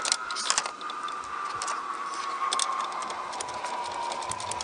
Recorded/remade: recorded